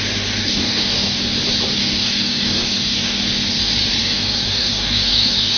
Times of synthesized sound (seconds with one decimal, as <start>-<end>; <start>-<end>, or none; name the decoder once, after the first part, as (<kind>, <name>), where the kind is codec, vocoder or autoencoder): 0.4-1.2 (codec, DAC); 1.8-3.2; 4.0-5.6